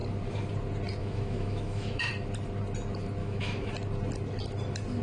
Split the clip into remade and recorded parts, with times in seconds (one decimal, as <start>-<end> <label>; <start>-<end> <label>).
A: 0.0-1.0 recorded; 1.0-2.1 remade; 2.1-3.2 recorded; 3.2-3.7 remade; 3.7-5.0 recorded